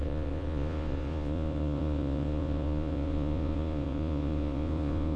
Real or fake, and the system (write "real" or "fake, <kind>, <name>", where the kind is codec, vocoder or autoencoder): fake, vocoder, Vocos